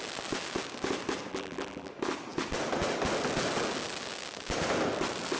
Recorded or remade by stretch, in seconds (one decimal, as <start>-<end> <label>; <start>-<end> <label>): 0.0-1.3 recorded; 1.3-1.9 remade; 1.9-5.4 recorded

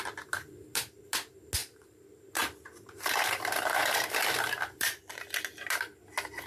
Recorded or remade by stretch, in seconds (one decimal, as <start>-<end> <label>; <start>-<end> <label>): 0.0-1.6 recorded; 1.6-5.0 remade; 5.0-6.5 recorded

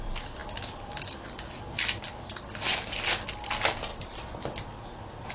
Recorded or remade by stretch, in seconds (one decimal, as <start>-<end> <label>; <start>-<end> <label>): 0.0-0.4 recorded; 0.4-1.8 remade; 1.8-3.9 recorded; 3.9-5.3 remade

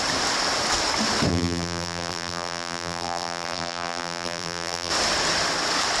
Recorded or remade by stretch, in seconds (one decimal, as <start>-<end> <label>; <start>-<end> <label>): 0.0-1.3 recorded; 1.3-4.9 remade; 4.9-6.0 recorded

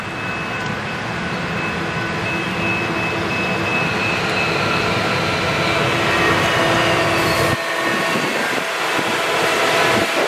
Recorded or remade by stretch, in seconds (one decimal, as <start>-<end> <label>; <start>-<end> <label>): 0.0-10.3 recorded

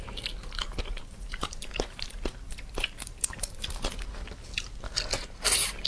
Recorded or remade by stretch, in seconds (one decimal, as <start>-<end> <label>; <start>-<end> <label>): 0.0-0.4 recorded; 0.4-3.9 remade; 3.9-5.9 recorded

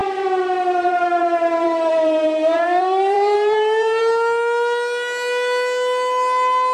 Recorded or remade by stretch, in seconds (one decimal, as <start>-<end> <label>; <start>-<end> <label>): 0.0-4.0 remade; 4.0-6.7 recorded